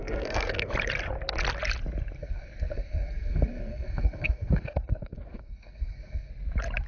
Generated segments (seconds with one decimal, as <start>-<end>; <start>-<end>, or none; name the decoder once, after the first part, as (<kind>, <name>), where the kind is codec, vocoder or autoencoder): 0.0-0.7 (codec, SNAC); 2.2-6.3